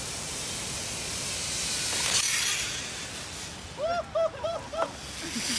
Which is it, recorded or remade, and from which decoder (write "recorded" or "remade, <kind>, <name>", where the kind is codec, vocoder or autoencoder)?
recorded